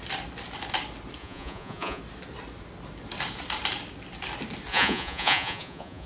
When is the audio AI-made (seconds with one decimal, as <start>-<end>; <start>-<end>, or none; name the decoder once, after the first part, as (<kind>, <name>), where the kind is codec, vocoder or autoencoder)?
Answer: 1.2-2.0 (vocoder, Vocos); 4.7-6.1